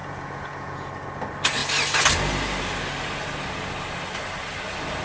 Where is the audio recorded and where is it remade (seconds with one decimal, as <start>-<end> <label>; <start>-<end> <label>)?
0.0-0.9 remade; 0.9-5.0 recorded